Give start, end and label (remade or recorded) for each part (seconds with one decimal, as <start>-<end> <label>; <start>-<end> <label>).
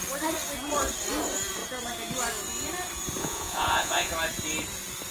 0.0-3.2 recorded; 3.2-4.1 remade; 4.1-5.1 recorded